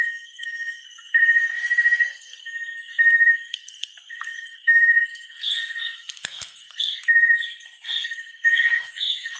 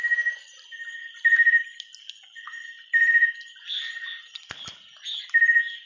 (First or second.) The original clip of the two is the second